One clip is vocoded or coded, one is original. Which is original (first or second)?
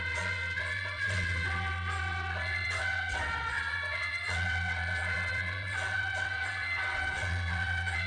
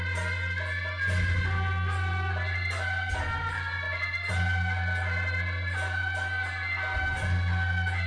second